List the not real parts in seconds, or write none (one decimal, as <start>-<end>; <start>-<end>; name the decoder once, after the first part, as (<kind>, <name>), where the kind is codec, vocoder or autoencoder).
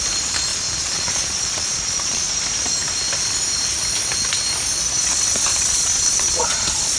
0.5-2.3 (vocoder, Vocos); 5.5-7.0